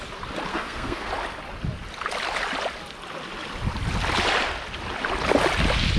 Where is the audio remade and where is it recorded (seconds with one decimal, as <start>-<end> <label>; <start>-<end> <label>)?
0.0-0.5 recorded; 0.5-1.1 remade; 1.1-6.0 recorded